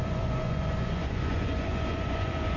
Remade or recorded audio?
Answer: remade